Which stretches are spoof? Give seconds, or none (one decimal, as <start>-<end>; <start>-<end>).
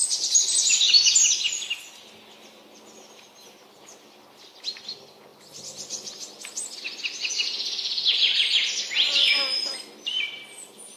none